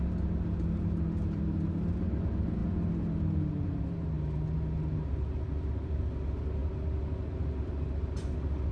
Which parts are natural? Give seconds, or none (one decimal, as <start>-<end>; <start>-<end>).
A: 0.0-8.7